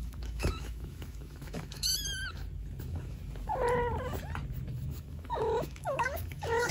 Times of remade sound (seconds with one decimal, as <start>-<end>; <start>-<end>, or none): 0.0-1.9; 2.8-3.2; 4.9-6.7